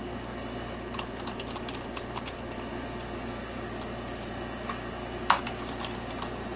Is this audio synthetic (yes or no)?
no